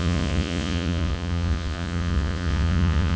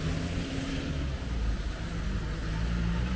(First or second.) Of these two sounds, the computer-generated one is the first